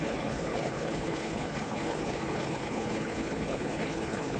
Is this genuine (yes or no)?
no